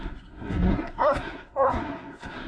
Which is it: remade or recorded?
remade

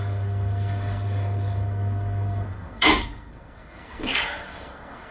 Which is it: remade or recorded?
remade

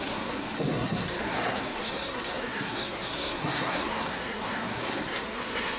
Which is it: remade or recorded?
remade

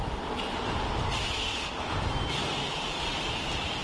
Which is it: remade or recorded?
recorded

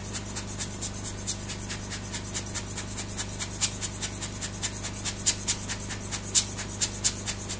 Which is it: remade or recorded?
recorded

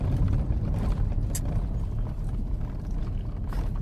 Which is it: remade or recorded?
recorded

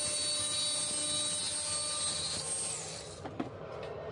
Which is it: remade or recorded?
recorded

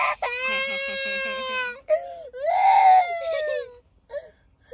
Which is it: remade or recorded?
recorded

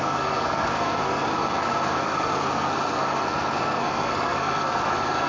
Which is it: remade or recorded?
remade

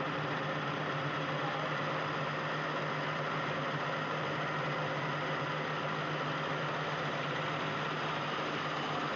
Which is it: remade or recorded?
recorded